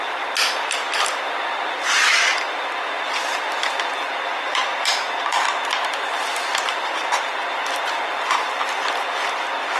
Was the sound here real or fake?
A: real